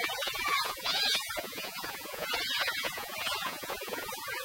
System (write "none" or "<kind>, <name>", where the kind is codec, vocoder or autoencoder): vocoder, Vocos